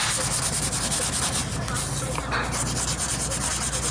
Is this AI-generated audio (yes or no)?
no